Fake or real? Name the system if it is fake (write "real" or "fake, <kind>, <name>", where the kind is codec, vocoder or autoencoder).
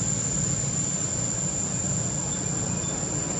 real